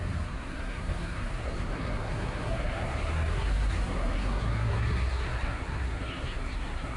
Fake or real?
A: fake